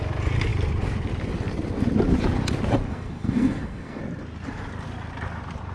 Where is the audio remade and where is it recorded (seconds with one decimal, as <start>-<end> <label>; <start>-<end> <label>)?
0.0-2.9 recorded; 2.9-4.0 remade; 4.0-5.7 recorded